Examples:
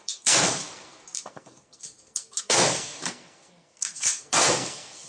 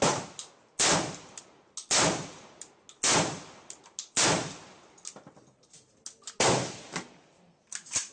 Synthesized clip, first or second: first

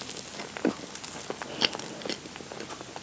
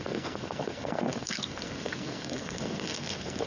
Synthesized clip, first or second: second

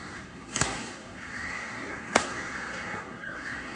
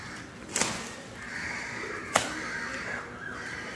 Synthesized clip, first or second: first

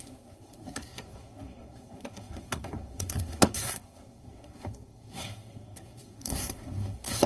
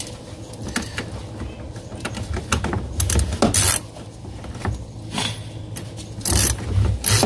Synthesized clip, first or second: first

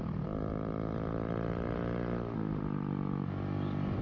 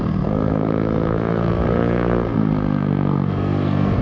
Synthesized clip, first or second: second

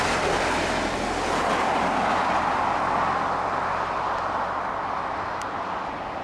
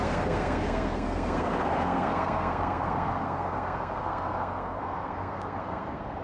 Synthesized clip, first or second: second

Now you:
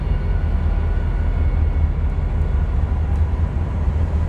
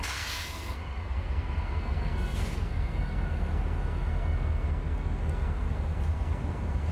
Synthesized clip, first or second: second